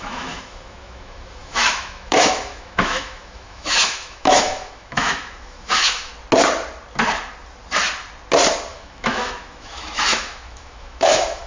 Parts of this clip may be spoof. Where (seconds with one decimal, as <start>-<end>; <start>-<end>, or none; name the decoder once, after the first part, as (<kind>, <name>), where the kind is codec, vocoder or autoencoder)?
0.0-6.1 (autoencoder, DAC-VAE); 8.7-11.5